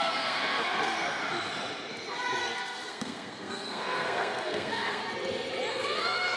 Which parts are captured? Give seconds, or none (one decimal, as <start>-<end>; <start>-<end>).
1.2-2.4; 5.0-5.7